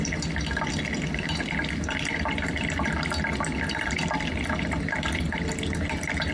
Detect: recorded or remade recorded